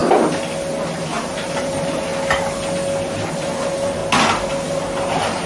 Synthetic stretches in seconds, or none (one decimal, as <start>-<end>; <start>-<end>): 0.7-2.1; 3.3-4.0; 4.8-5.5